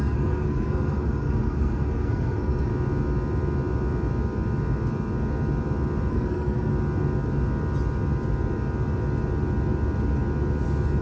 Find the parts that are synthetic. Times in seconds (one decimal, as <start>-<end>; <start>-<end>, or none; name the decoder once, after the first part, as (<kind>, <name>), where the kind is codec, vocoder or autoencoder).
0.0-2.7 (codec, SNAC); 6.1-6.7